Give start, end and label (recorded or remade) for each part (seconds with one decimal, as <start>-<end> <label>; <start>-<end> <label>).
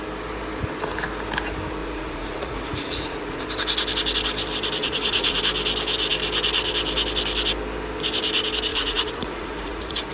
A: 0.0-1.8 recorded; 1.8-3.4 remade; 3.4-4.8 recorded; 4.8-5.4 remade; 5.4-8.7 recorded; 8.7-10.1 remade